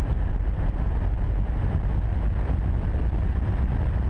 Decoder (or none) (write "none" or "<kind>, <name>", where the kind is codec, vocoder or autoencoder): none